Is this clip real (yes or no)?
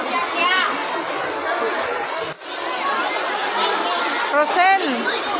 yes